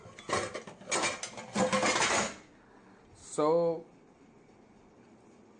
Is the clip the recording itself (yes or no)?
yes